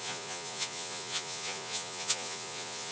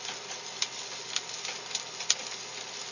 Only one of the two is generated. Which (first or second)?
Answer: first